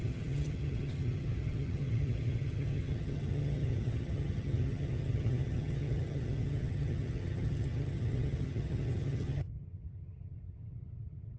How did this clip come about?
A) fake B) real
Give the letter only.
A